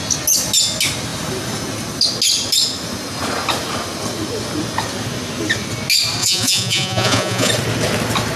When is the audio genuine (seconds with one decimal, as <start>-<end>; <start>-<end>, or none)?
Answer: 0.0-6.2; 7.5-8.4